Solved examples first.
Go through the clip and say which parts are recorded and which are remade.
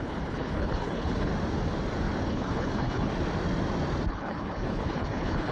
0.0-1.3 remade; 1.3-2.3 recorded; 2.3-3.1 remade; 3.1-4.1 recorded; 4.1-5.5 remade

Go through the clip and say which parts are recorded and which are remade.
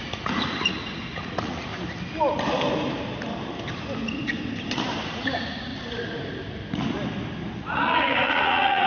0.0-1.7 remade; 1.7-5.0 recorded; 5.0-5.7 remade; 5.7-7.6 recorded; 7.6-8.9 remade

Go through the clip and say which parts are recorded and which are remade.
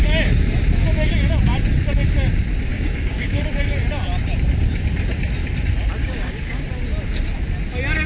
0.0-2.7 recorded; 2.7-3.4 remade; 3.4-6.0 recorded; 6.0-6.6 remade; 6.6-8.1 recorded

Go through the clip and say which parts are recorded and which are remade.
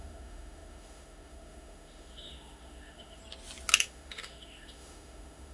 0.0-3.2 remade; 3.2-3.8 recorded; 3.8-5.5 remade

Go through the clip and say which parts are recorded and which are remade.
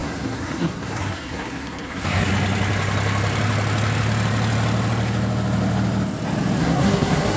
0.0-2.3 remade; 2.3-6.6 recorded; 6.6-7.4 remade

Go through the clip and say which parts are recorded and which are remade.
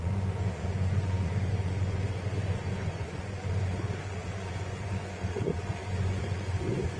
0.0-7.0 remade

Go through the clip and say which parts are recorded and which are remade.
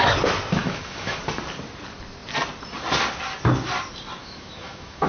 0.0-0.6 recorded; 0.6-1.2 remade; 1.2-4.2 recorded; 4.2-5.1 remade